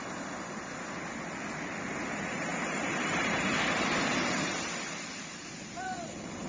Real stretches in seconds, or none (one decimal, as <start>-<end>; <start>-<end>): 0.0-2.5